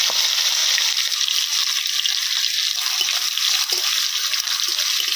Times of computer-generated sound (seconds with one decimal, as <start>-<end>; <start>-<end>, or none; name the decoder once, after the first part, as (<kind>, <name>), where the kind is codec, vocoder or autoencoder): 0.6-1.4 (vocoder, BigVGAN v2); 2.2-4.7